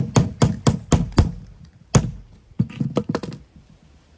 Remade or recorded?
recorded